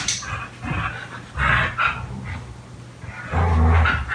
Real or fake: real